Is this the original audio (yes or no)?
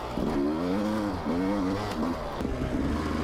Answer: yes